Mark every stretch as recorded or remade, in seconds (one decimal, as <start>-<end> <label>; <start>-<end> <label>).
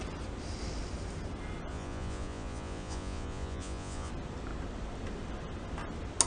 0.0-1.7 recorded; 1.7-4.1 remade; 4.1-6.3 recorded